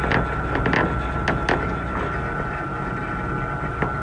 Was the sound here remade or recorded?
recorded